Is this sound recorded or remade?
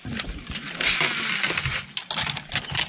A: recorded